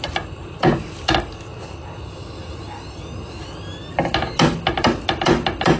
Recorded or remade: recorded